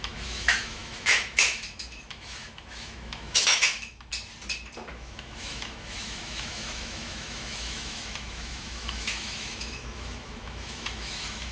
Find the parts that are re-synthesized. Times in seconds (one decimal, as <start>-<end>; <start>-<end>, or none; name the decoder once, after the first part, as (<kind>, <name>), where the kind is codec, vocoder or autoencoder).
0.0-4.1 (autoencoder, DAC-VAE); 4.9-11.5